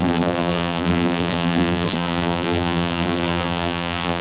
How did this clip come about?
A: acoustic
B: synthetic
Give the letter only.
B